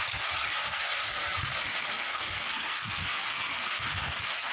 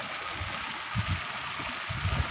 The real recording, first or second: second